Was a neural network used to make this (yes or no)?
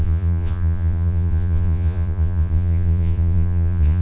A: yes